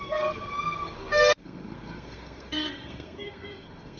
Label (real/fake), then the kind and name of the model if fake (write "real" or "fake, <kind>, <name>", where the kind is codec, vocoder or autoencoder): fake, codec, SNAC